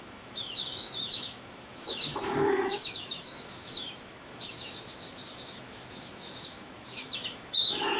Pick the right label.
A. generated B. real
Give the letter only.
A